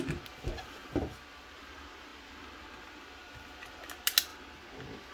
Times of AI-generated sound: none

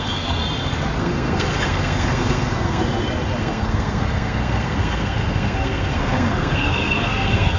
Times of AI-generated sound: 0.0-0.4 (codec, SNAC); 1.0-2.8; 3.4-7.6

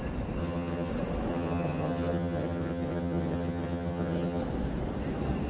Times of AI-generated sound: 0.4-0.9 (vocoder, HiFi-GAN); 1.3-4.4

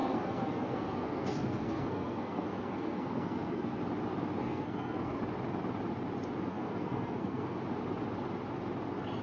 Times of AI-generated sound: 0.0-3.8 (codec, SNAC); 4.4-5.2; 6.5-7.6

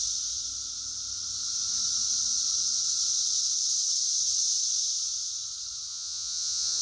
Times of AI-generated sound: 5.9-6.8 (vocoder, Vocos)

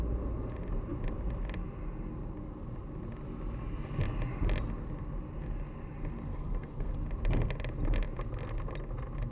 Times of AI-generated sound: 6.3-6.9 (codec, SNAC)

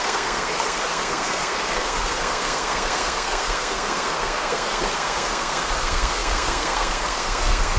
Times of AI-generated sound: 0.0-7.8 (codec, SNAC)

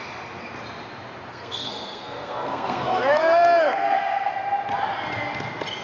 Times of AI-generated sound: 1.3-4.3 (codec, SNAC)